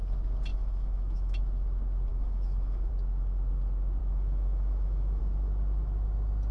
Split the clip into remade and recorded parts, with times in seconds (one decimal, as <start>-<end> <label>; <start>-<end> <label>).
0.0-0.5 recorded; 0.5-1.4 remade; 1.4-2.1 recorded; 2.1-2.9 remade; 2.9-4.0 recorded; 4.0-5.2 remade; 5.2-6.5 recorded